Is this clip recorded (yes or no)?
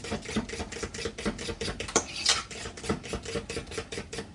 yes